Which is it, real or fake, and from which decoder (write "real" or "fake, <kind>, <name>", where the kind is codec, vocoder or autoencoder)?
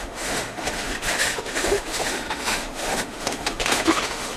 fake, autoencoder, DAC-VAE